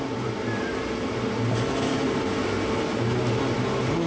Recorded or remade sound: recorded